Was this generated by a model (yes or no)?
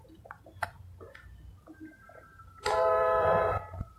yes